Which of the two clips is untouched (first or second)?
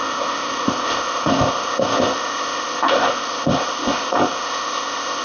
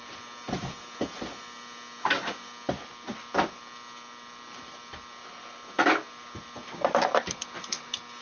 second